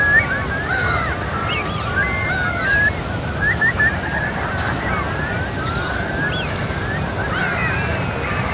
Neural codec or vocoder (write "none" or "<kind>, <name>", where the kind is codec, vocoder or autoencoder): none